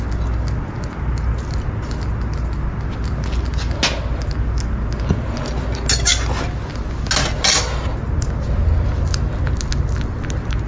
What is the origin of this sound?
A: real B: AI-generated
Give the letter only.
A